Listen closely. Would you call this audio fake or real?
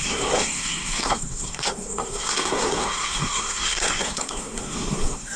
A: fake